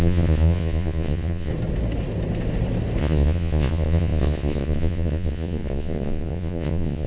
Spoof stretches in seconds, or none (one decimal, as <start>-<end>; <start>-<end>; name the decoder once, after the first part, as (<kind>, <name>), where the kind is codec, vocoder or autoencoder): 0.0-1.5 (vocoder, Vocos); 3.0-7.1